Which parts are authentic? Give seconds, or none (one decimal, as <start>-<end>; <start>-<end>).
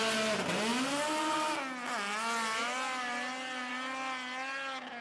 0.0-5.0